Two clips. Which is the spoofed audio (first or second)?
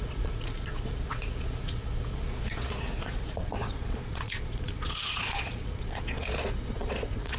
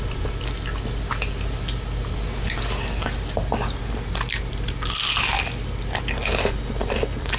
first